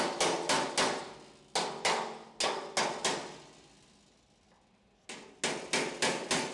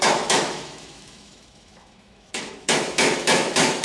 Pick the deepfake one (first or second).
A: second